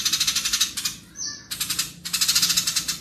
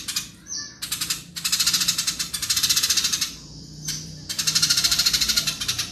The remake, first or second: second